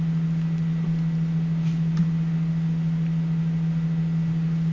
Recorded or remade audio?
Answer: recorded